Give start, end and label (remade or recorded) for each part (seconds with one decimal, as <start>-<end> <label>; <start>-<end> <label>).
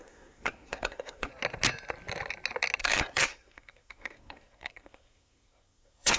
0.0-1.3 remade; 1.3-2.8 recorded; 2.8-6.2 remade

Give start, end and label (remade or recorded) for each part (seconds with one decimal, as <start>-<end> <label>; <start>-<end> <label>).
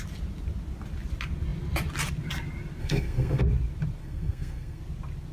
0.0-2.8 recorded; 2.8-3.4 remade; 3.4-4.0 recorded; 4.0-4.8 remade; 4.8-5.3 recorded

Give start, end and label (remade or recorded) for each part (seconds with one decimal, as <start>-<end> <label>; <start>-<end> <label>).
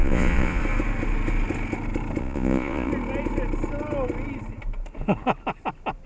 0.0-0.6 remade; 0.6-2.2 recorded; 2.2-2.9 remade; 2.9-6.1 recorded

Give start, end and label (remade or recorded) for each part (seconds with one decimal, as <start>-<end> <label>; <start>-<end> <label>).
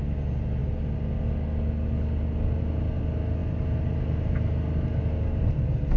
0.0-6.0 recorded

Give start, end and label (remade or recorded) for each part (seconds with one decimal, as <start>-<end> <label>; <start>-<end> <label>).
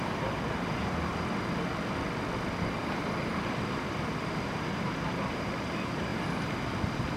0.0-1.1 remade; 1.1-2.9 recorded; 2.9-6.1 remade; 6.1-7.2 recorded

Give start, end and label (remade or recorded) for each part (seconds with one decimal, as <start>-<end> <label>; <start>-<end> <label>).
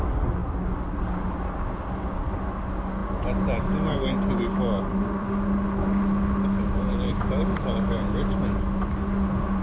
0.0-9.6 recorded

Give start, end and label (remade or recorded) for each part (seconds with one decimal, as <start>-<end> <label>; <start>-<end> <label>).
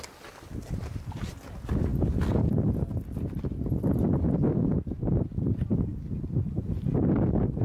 0.0-7.6 recorded